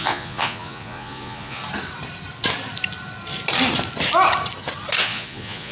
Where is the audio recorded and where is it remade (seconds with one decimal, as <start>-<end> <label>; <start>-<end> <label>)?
0.0-1.6 remade; 1.6-5.0 recorded; 5.0-5.7 remade